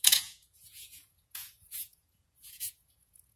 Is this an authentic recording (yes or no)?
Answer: no